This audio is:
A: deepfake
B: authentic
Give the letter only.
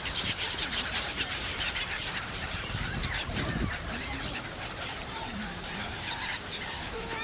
A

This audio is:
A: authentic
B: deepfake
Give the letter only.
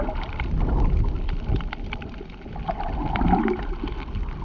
A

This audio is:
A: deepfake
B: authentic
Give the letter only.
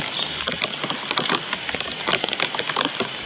B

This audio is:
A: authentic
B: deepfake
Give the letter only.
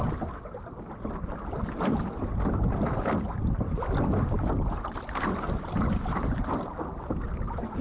A